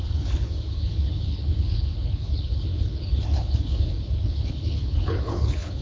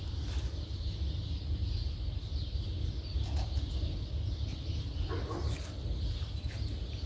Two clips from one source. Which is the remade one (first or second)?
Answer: first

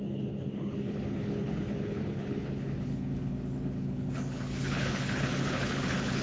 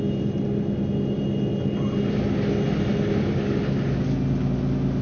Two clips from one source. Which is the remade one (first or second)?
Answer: first